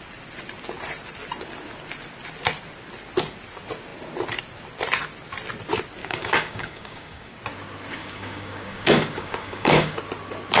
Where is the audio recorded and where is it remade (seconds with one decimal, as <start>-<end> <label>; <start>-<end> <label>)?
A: 0.0-6.0 recorded; 6.0-7.3 remade; 7.3-8.0 recorded; 8.0-10.0 remade; 10.0-10.6 recorded